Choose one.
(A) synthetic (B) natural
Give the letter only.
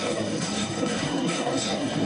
A